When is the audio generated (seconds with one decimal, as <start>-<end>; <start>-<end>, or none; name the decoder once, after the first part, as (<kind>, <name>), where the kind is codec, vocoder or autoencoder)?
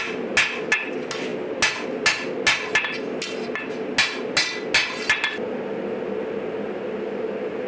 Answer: none